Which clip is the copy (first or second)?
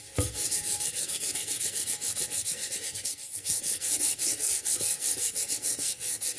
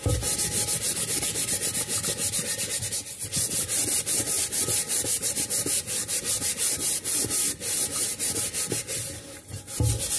first